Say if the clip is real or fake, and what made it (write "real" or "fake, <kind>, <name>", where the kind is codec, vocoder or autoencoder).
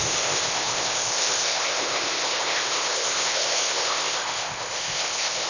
fake, codec, ZipCodec